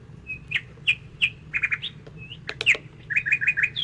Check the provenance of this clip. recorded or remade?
recorded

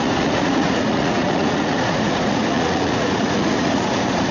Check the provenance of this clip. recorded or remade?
remade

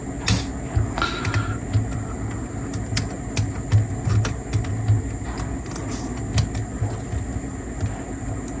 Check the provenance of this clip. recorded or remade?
recorded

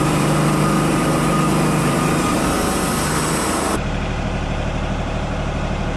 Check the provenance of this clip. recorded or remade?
remade